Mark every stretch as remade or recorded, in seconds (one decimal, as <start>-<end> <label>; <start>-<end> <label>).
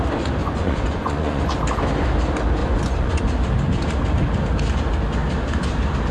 0.0-0.4 recorded; 0.4-1.4 remade; 1.4-2.6 recorded; 2.6-3.2 remade; 3.2-6.1 recorded